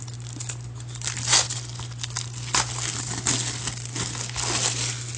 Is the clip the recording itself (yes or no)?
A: yes